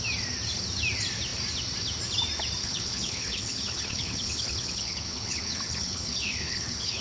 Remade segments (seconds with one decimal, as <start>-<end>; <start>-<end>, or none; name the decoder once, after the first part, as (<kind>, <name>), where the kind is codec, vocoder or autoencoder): 2.6-7.0 (codec, HILCodec)